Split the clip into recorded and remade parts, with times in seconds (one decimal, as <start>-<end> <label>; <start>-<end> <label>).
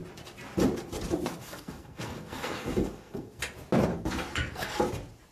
0.0-1.4 recorded; 1.4-3.4 remade; 3.4-3.9 recorded; 3.9-4.8 remade; 4.8-5.3 recorded